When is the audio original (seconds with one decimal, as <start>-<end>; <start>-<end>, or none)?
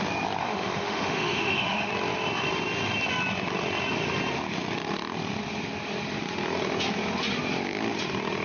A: 0.0-0.4; 1.9-8.4